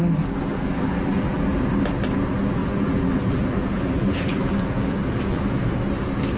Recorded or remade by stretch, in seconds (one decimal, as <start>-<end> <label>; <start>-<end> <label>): 0.0-0.5 recorded; 0.5-1.6 remade; 1.6-2.6 recorded; 2.6-5.4 remade; 5.4-6.4 recorded